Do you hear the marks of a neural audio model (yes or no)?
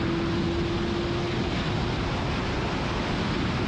no